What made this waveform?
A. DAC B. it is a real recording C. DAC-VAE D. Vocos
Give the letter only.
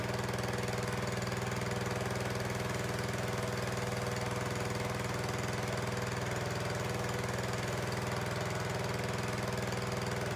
B